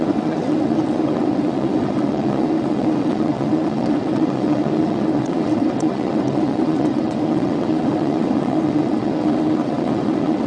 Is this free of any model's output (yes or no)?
no